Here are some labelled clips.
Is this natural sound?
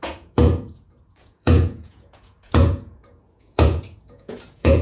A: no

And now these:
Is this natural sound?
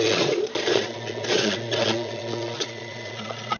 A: no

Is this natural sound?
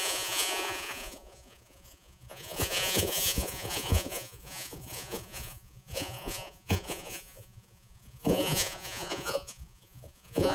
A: no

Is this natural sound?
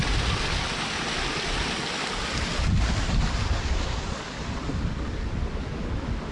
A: yes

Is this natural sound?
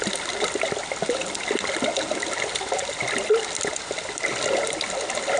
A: yes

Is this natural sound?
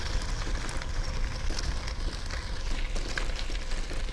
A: yes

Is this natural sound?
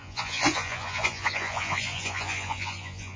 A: no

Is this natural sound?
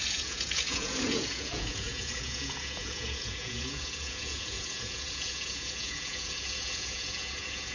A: no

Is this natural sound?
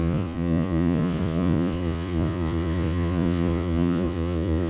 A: no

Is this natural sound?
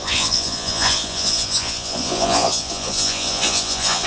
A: no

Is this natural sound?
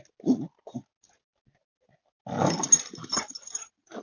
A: yes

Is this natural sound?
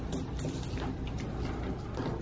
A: yes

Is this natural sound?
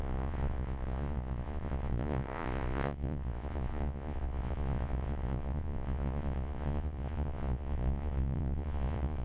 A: no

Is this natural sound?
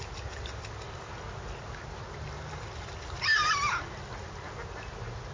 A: yes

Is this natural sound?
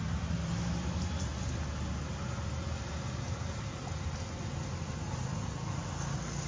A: yes